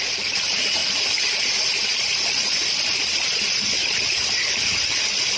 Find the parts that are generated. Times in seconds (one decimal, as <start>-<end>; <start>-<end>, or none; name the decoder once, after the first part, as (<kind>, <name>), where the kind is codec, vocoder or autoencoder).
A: none